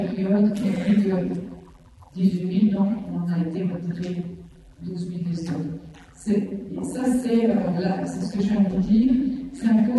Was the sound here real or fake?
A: fake